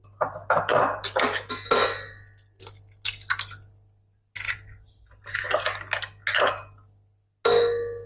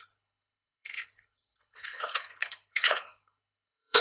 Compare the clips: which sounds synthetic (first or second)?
second